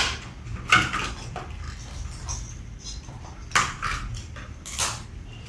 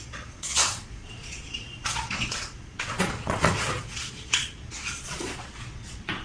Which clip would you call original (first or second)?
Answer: first